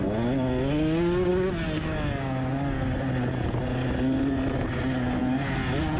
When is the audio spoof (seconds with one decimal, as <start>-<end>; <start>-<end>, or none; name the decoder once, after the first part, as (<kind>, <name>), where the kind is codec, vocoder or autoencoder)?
none